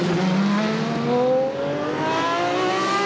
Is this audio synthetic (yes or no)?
no